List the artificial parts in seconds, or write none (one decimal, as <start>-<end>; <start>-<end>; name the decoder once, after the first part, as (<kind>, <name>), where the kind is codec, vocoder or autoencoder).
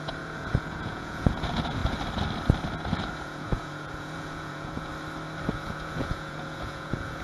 0.0-1.8 (vocoder, Vocos); 3.2-4.9; 5.5-7.2